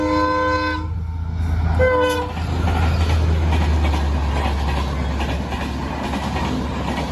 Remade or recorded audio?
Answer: recorded